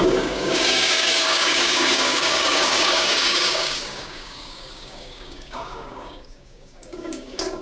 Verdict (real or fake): fake